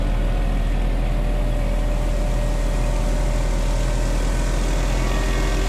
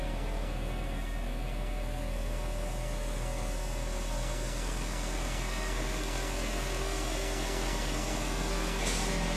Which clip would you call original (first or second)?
first